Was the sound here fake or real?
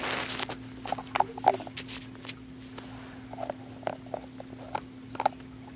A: real